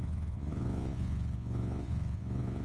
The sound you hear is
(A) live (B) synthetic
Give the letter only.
B